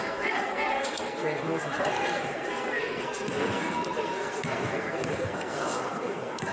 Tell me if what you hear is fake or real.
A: fake